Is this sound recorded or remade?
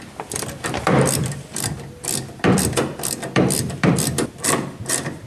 remade